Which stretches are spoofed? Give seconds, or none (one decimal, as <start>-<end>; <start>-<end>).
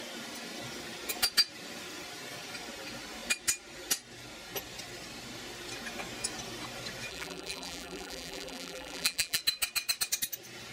7.1-9.4